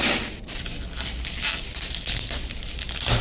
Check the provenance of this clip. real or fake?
real